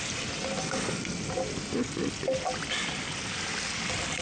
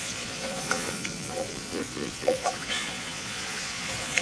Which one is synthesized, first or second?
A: second